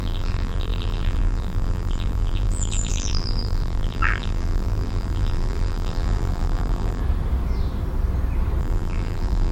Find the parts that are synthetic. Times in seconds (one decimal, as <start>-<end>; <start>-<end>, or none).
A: 0.0-7.0; 8.6-9.5